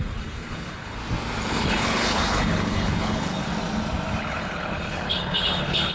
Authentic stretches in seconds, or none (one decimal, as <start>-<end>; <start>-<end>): 1.0-1.5; 3.5-4.2